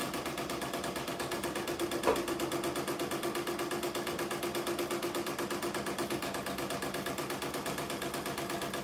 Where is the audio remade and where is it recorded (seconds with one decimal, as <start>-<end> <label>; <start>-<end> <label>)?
0.0-8.8 recorded

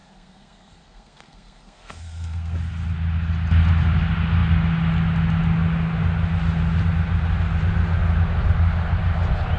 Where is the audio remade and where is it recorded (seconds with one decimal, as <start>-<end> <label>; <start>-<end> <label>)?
0.0-2.6 remade; 2.6-9.6 recorded

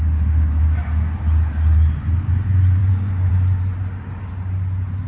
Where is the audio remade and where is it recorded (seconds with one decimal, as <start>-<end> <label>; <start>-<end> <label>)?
0.0-2.8 recorded; 2.8-3.3 remade; 3.3-5.1 recorded